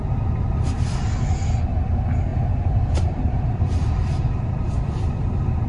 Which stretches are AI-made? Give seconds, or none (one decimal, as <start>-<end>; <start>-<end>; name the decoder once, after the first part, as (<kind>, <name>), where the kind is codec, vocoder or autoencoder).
2.3-5.3 (vocoder, BigVGAN v2)